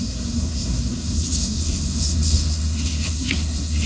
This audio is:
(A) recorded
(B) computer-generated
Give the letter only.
B